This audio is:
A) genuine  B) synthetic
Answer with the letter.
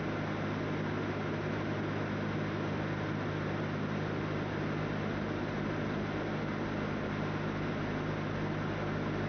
A